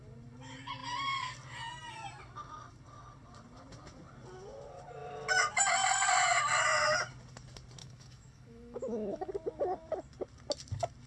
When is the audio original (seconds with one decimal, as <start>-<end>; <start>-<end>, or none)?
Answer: 0.0-7.8; 9.3-11.1